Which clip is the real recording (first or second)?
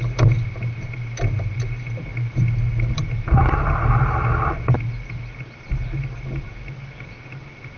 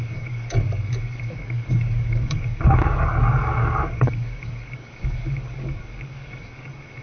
first